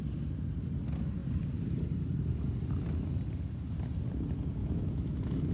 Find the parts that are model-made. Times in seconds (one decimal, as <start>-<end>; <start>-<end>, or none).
4.6-5.5